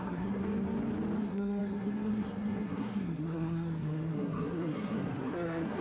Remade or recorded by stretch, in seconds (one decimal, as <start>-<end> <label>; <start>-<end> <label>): 0.0-0.4 remade; 0.4-1.2 recorded; 1.2-5.8 remade